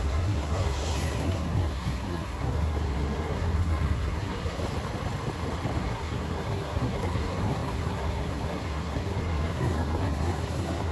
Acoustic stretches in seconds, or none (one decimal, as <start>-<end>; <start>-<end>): 4.6-5.8